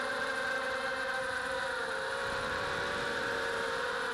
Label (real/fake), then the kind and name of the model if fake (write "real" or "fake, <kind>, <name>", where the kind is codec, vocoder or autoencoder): fake, vocoder, BigVGAN v2